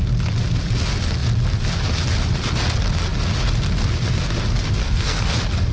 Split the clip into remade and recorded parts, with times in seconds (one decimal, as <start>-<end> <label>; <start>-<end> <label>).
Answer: 0.0-4.8 recorded; 4.8-5.3 remade; 5.3-5.7 recorded